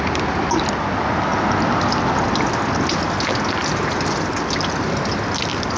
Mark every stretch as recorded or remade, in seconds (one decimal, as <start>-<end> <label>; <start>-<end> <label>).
0.0-5.8 recorded

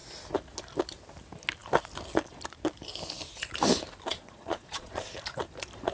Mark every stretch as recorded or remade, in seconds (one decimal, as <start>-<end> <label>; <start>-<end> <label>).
0.0-4.1 recorded; 4.1-5.1 remade; 5.1-5.9 recorded

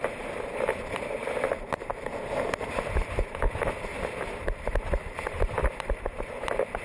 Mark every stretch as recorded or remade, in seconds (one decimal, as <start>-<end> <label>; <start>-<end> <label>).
0.0-6.8 recorded

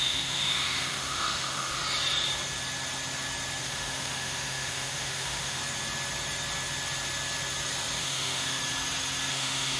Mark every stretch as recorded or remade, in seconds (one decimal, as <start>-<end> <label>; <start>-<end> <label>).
0.0-1.8 remade; 1.8-3.6 recorded; 3.6-5.6 remade; 5.6-8.0 recorded; 8.0-8.6 remade; 8.6-9.3 recorded; 9.3-9.8 remade

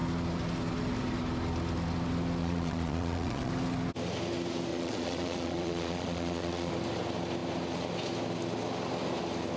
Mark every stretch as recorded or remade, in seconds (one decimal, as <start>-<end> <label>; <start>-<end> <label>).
0.0-2.4 recorded; 2.4-3.5 remade; 3.5-4.7 recorded; 4.7-6.7 remade; 6.7-9.6 recorded